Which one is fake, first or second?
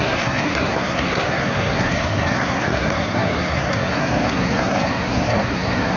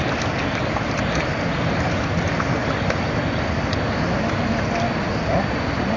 first